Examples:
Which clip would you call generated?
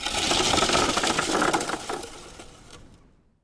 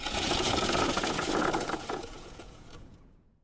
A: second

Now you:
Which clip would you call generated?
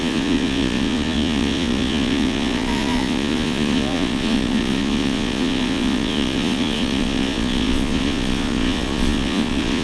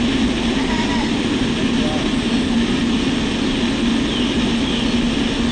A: first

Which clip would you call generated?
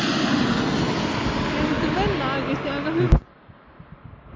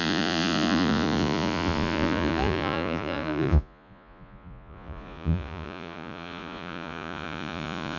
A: second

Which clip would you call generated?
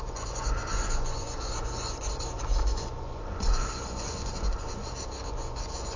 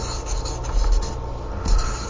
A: first